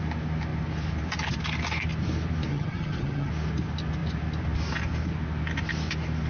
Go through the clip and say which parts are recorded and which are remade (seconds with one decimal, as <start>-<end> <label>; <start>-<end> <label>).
0.0-2.5 recorded; 2.5-3.3 remade; 3.3-6.3 recorded